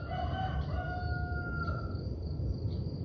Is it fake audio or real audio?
real